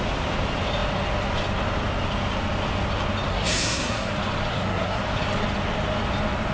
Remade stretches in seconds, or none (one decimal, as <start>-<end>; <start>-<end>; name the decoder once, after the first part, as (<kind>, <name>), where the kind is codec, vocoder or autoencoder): 3.3-4.1 (codec, SNAC); 4.5-5.0